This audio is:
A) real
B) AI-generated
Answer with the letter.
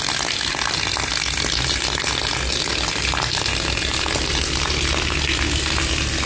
A